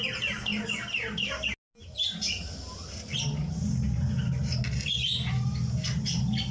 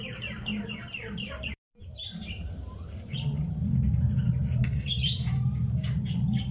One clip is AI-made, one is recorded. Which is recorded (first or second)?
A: first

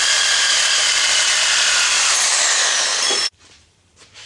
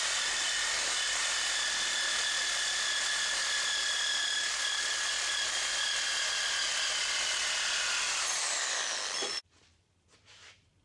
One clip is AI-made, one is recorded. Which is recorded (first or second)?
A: second